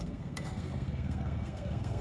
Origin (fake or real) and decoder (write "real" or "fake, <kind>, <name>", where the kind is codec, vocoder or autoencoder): fake, codec, SNAC